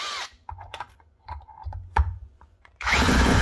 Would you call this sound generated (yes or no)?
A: yes